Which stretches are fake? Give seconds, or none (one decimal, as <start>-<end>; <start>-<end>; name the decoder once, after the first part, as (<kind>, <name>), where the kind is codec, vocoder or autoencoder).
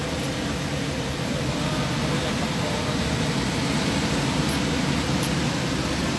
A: none